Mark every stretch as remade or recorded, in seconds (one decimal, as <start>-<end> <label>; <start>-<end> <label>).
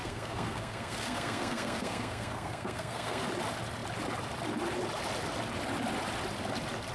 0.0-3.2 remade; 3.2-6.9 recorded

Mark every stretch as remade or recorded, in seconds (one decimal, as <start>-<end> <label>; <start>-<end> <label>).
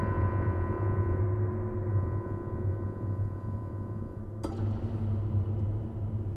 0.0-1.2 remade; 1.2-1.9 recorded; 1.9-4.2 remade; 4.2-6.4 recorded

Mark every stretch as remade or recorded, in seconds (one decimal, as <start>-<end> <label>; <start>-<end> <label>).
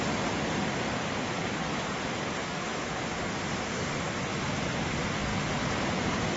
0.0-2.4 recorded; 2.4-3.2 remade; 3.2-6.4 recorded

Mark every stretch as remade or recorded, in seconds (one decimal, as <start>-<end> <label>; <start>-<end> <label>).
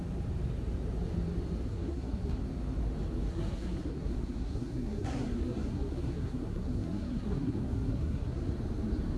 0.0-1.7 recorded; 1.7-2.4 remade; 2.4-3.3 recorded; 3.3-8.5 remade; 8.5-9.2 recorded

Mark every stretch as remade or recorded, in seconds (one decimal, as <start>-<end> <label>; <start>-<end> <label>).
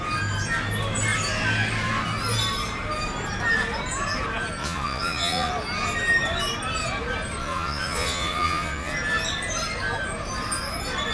0.0-4.6 recorded; 4.6-5.5 remade; 5.5-7.4 recorded; 7.4-8.9 remade; 8.9-11.1 recorded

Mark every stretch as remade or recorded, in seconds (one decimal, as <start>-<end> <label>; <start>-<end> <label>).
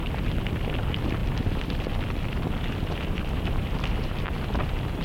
0.0-1.2 recorded; 1.2-4.2 remade; 4.2-5.0 recorded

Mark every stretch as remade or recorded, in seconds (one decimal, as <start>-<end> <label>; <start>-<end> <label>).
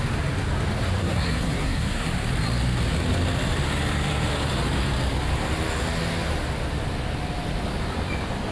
0.0-1.0 recorded; 1.0-2.1 remade; 2.1-8.5 recorded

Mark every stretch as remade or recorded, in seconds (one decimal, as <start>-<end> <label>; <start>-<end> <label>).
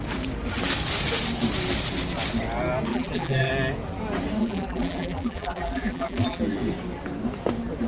0.0-2.9 recorded; 2.9-3.5 remade; 3.5-4.4 recorded; 4.4-6.4 remade; 6.4-7.9 recorded